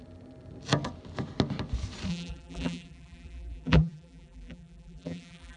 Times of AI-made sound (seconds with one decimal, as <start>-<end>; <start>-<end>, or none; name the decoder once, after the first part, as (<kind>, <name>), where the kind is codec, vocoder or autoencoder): 2.1-5.6 (vocoder, BigVGAN v2)